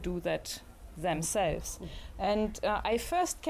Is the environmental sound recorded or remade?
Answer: recorded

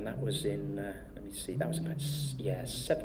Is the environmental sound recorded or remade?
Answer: recorded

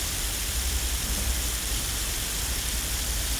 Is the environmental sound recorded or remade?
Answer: remade